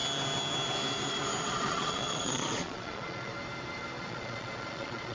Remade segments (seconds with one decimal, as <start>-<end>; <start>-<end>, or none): 1.4-3.3; 4.0-5.1